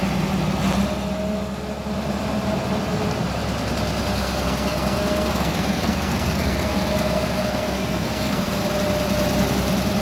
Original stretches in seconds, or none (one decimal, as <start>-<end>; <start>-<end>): 0.0-4.1; 8.6-10.0